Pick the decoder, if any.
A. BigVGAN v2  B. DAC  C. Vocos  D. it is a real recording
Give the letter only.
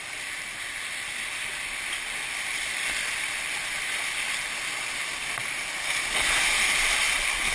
D